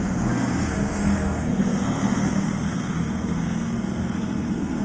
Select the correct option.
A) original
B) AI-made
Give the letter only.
B